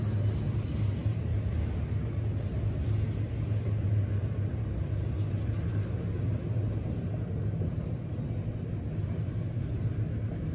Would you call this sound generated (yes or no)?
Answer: no